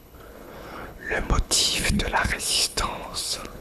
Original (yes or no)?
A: no